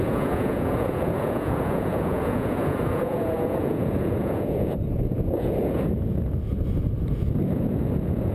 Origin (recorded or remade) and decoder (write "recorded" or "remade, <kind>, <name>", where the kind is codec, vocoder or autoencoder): remade, vocoder, Vocos